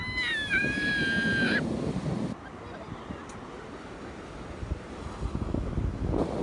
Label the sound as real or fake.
real